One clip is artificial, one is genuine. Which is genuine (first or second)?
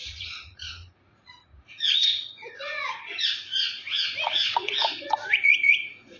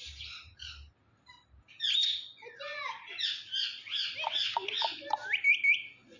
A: second